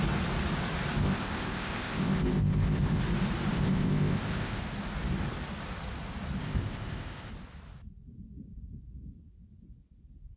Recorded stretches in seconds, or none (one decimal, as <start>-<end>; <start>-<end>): 0.0-1.0; 3.0-3.5; 4.6-6.4; 7.3-10.4

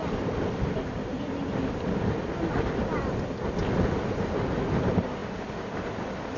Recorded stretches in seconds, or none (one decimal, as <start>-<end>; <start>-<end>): 0.0-6.4

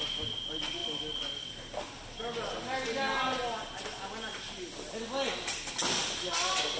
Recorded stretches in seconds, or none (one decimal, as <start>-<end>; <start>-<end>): 0.0-6.8

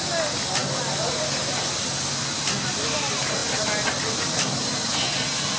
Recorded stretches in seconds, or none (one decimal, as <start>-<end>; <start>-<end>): 0.0-5.6

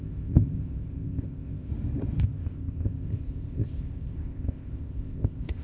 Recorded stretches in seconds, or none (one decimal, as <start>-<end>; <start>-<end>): 1.7-2.2

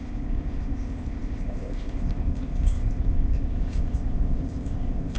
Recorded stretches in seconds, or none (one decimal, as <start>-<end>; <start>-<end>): none

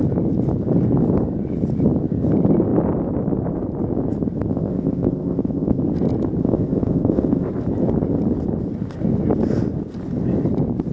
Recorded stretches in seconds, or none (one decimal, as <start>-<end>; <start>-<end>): 0.0-4.5; 5.8-6.4; 7.5-10.9

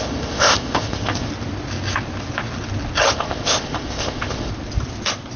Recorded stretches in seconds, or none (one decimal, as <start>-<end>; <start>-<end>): 1.3-3.1; 4.5-5.4